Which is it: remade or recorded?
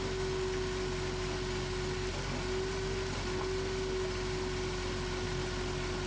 recorded